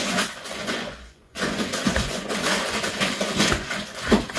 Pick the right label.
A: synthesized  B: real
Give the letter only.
A